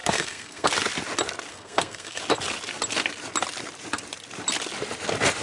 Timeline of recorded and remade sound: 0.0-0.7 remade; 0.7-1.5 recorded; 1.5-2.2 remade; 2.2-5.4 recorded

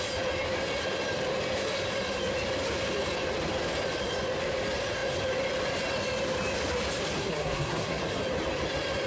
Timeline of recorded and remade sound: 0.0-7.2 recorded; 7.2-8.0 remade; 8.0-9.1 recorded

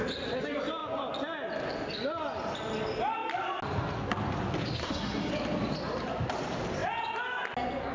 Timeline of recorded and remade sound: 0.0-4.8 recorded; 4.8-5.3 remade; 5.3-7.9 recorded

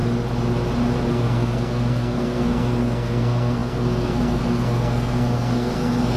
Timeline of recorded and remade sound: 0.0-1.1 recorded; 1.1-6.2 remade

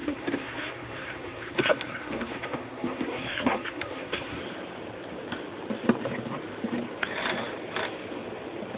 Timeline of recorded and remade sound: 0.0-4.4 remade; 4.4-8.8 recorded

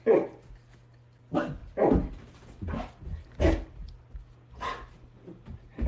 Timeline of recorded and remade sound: 0.0-5.9 recorded

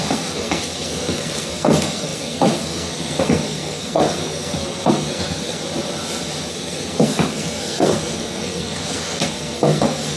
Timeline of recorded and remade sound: 0.0-5.6 remade; 5.6-6.5 recorded; 6.5-10.2 remade